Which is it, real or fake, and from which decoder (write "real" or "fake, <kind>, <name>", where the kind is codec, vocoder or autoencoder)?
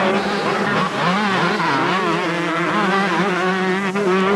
real